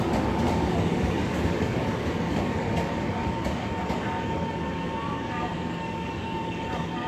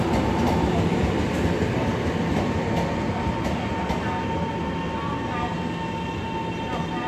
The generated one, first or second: first